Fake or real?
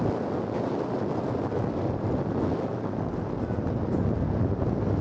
real